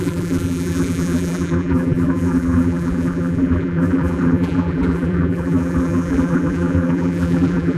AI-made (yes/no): yes